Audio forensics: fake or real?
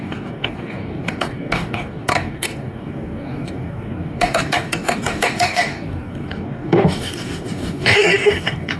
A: fake